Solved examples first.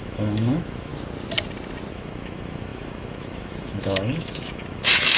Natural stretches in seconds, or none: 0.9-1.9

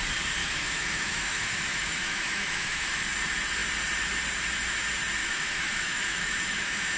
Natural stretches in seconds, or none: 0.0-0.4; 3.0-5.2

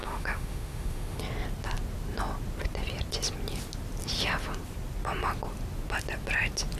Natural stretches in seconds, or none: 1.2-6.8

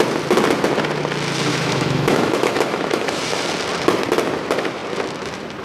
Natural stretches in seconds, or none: 0.0-1.5; 3.2-5.6

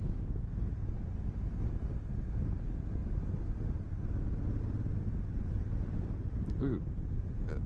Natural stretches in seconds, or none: 0.6-7.7

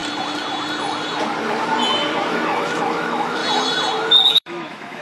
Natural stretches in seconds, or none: 0.0-2.3; 3.4-4.3